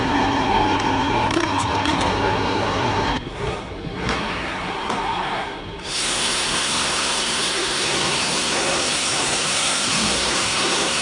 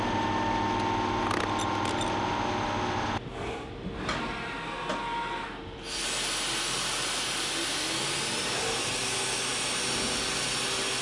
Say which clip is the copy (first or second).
first